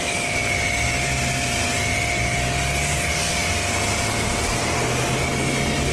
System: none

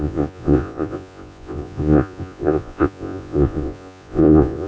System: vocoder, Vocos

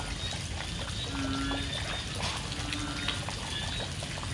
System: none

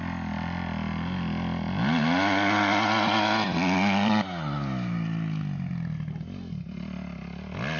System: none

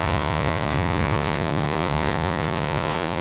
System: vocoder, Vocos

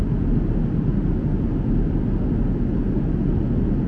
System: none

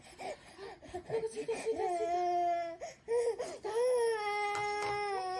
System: none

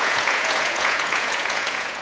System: vocoder, Vocos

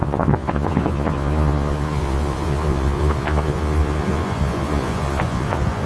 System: vocoder, Vocos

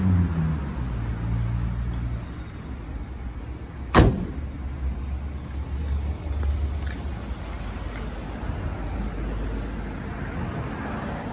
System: none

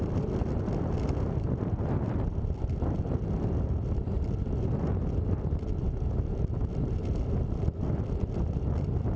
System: none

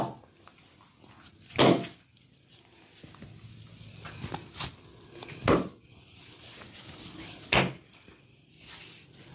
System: none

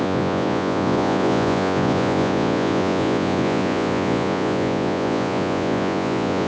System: vocoder, Vocos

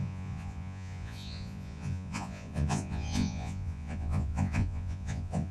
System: vocoder, Vocos